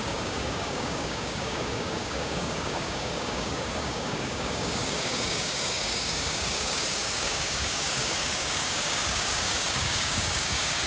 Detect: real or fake fake